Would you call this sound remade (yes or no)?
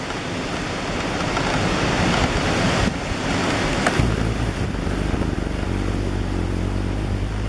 no